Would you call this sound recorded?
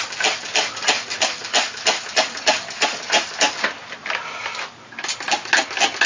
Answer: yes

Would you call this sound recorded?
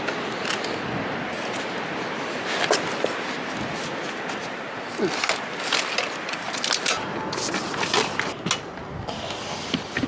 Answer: yes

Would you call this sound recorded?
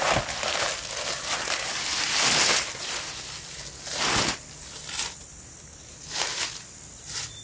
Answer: yes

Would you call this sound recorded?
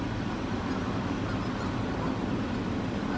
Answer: yes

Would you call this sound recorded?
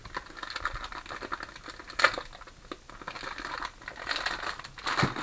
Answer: yes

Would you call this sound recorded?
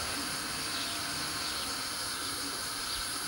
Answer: yes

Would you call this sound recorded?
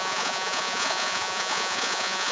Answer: no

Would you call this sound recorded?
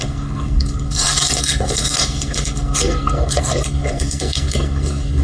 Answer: no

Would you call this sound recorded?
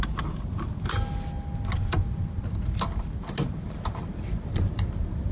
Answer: yes